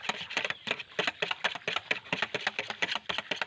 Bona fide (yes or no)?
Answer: yes